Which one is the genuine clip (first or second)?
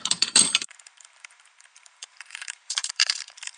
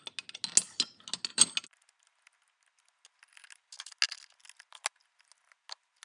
second